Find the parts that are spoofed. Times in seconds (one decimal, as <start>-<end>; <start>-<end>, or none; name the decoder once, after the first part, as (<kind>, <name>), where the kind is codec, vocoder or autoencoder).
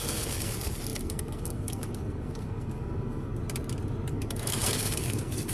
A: 0.0-3.4 (codec, SNAC); 4.1-5.5